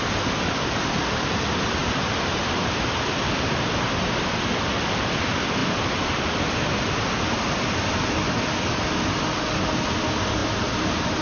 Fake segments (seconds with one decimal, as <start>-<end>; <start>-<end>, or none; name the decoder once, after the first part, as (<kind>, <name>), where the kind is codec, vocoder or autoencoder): 1.8-2.8 (vocoder, BigVGAN v2); 10.4-11.2